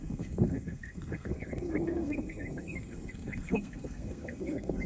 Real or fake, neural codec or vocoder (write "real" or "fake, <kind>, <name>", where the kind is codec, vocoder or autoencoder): fake, codec, SNAC